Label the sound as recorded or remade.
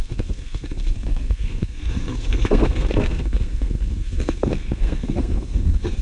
remade